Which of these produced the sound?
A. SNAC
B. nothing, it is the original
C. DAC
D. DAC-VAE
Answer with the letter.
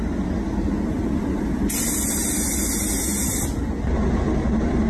B